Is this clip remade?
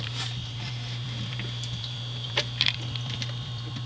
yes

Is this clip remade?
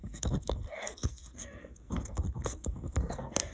yes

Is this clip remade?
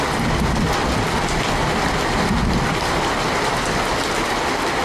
no